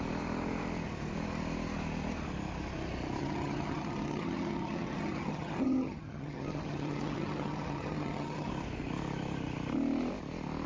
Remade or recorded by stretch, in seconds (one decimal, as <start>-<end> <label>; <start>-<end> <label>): 0.0-3.2 recorded; 3.2-8.5 remade; 8.5-10.7 recorded